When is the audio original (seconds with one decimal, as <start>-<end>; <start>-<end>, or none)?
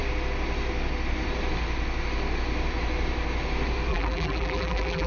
0.0-3.9